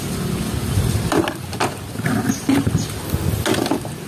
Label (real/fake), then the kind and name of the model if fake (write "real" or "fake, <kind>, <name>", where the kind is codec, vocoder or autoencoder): real